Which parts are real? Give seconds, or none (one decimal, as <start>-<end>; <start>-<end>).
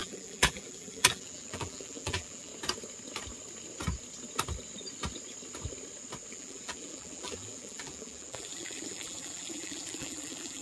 2.5-6.3